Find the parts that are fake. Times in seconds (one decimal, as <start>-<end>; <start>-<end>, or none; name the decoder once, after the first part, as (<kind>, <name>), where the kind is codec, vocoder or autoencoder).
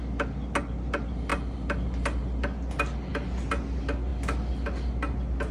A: none